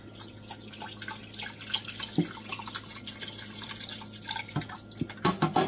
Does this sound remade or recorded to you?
recorded